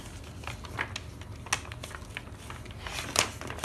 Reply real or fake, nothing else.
real